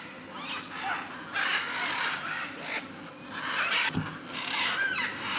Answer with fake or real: real